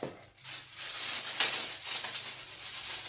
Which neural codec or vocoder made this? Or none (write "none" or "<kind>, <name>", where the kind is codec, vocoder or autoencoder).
none